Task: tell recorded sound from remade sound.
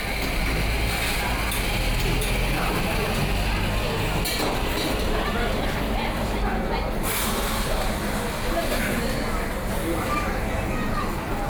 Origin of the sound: recorded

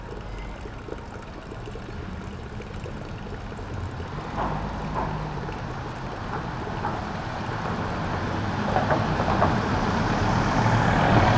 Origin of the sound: recorded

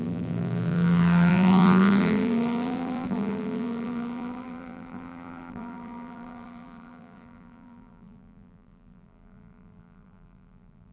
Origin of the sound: remade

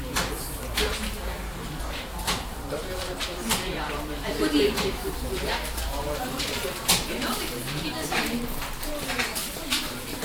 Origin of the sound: remade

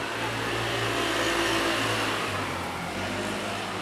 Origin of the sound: recorded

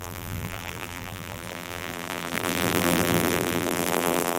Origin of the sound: remade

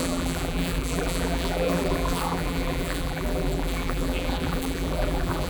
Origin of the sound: remade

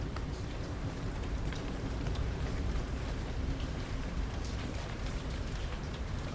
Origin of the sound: remade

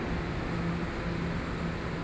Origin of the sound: recorded